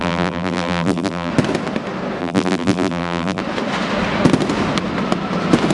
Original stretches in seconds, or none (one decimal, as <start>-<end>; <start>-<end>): 1.3-2.2; 3.4-5.7